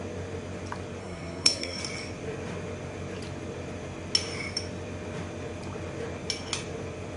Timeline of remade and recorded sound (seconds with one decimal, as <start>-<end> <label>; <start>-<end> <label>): 0.0-1.0 recorded; 1.0-1.8 remade; 1.8-7.2 recorded